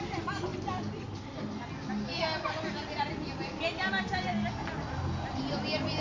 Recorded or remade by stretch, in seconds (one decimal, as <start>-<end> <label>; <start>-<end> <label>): 0.0-6.0 recorded